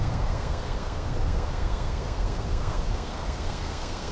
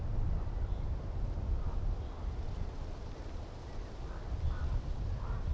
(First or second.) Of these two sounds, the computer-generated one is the first